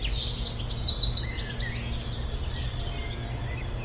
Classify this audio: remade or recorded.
recorded